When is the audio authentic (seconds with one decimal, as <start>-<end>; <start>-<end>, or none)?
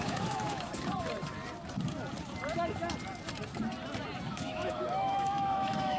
0.7-4.3